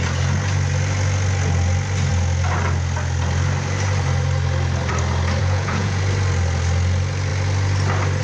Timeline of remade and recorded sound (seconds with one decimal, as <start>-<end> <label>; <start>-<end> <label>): 0.0-5.4 recorded; 5.4-6.0 remade; 6.0-8.2 recorded